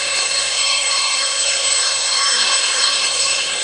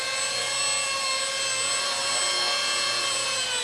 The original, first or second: second